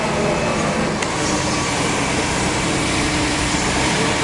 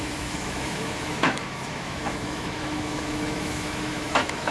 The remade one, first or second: second